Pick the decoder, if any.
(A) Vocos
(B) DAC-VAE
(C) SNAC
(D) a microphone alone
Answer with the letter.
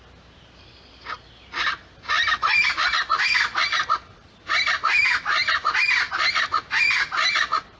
D